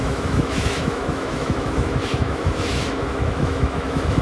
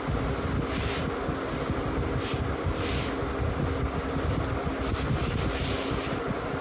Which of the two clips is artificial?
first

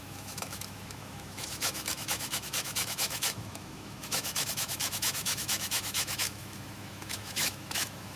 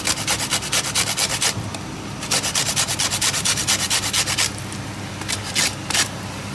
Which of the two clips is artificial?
first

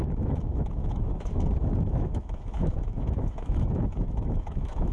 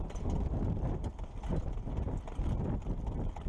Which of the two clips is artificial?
first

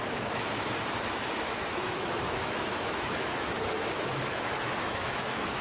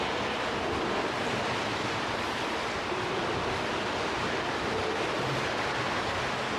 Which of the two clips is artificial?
first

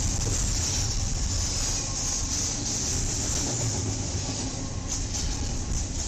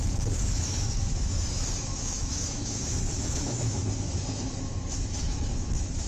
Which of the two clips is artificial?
second